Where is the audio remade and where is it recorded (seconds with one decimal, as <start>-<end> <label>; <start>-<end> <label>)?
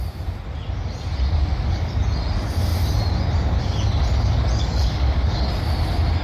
0.0-1.4 recorded; 1.4-1.9 remade; 1.9-4.6 recorded; 4.6-5.5 remade; 5.5-6.2 recorded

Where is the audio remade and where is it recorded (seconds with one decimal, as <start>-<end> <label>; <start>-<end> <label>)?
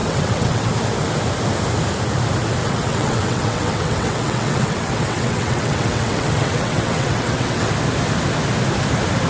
0.0-0.7 remade; 0.7-2.6 recorded; 2.6-7.7 remade; 7.7-9.3 recorded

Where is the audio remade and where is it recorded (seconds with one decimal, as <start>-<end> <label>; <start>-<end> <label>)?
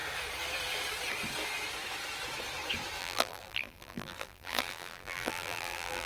0.0-3.0 recorded; 3.0-6.1 remade